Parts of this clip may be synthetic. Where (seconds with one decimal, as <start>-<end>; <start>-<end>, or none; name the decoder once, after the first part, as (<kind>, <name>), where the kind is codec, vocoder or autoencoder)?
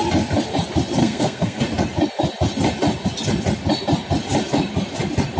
1.0-1.6 (codec, SNAC)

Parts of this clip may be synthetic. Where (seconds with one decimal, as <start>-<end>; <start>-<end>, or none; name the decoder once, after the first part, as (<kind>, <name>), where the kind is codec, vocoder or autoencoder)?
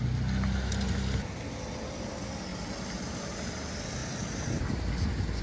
none